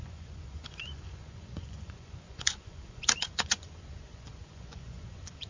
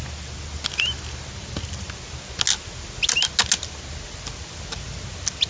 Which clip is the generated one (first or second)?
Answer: first